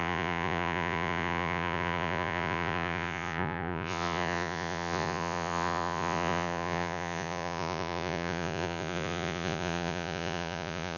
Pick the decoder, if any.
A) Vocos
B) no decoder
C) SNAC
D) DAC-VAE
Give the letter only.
A